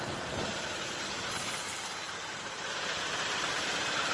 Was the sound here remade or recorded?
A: remade